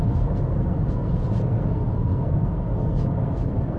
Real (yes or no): no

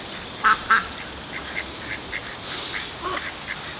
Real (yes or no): yes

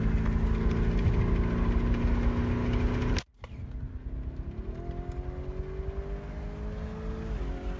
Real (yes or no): yes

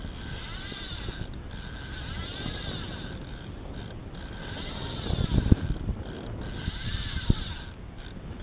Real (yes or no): yes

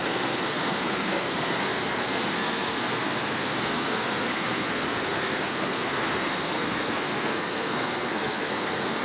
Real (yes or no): no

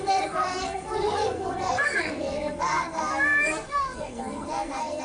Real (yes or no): no